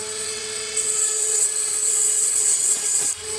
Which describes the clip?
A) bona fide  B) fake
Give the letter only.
B